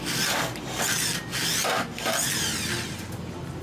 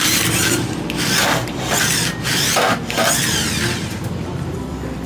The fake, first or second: second